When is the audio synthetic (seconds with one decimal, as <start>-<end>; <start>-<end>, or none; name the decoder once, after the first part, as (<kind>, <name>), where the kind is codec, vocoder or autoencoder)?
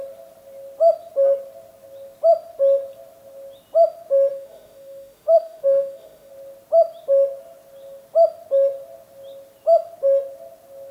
4.3-6.3 (autoencoder, DAC-VAE)